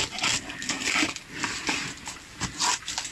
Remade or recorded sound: recorded